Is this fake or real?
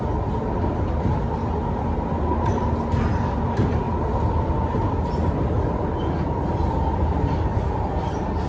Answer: real